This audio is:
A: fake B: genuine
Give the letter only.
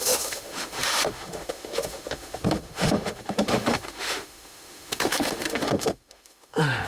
A